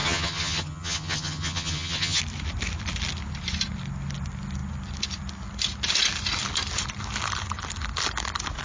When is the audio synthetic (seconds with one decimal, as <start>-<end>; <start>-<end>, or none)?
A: 0.0-2.2